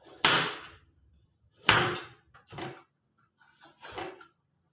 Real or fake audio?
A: real